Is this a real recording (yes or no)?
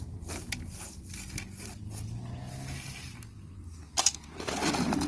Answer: yes